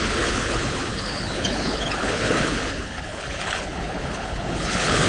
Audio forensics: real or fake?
fake